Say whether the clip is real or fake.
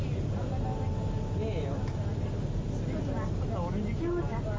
real